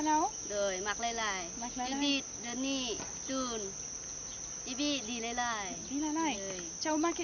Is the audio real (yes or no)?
yes